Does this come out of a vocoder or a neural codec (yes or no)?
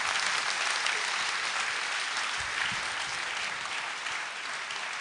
no